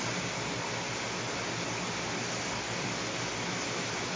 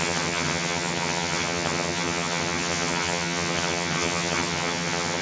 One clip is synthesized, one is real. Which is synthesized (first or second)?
second